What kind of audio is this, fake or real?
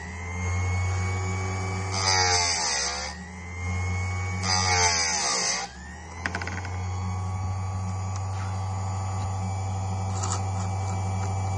real